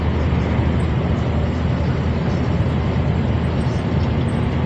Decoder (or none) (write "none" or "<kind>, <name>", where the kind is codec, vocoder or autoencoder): none